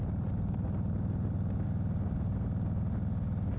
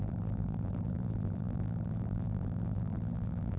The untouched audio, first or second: first